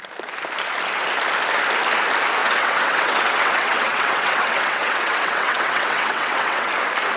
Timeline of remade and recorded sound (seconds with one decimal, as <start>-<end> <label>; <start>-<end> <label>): 0.0-2.4 recorded; 2.4-6.7 remade; 6.7-7.2 recorded